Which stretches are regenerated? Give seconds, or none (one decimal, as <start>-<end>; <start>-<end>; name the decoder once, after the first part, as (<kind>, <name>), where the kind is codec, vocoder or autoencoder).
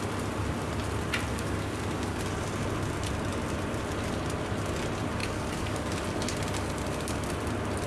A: 1.3-2.2 (codec, DAC); 5.2-6.0